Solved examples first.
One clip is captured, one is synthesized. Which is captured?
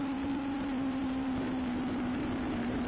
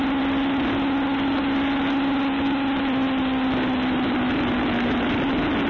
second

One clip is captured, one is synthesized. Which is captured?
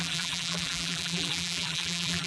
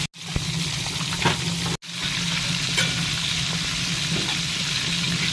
second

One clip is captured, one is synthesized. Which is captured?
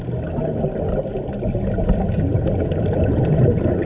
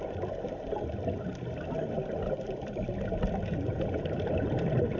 first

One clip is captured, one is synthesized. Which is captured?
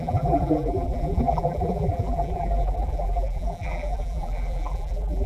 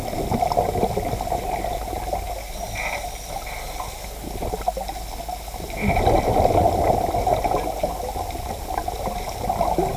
second